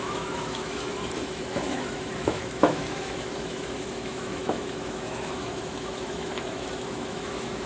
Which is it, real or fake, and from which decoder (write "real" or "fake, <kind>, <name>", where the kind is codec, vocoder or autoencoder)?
fake, autoencoder, DAC-VAE